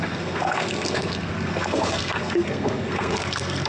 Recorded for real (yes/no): no